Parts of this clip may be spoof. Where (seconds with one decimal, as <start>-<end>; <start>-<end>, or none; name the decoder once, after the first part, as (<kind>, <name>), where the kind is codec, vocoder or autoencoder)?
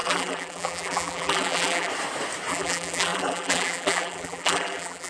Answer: 0.0-1.9 (vocoder, BigVGAN v2); 2.5-5.1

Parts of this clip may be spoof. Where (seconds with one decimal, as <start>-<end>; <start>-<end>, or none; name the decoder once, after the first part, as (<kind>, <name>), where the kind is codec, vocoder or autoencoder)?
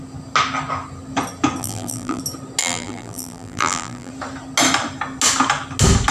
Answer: 1.6-2.2 (vocoder, BigVGAN v2); 2.6-4.1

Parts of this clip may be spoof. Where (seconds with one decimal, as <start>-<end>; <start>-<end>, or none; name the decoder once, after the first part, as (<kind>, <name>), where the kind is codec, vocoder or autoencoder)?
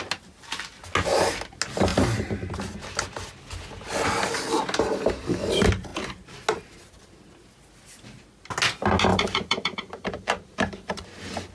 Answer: 9.1-11.0 (vocoder, BigVGAN v2)